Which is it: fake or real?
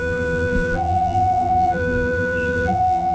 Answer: fake